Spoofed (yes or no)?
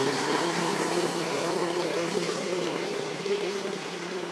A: yes